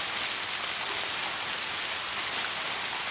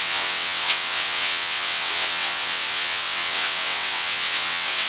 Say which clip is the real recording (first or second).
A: first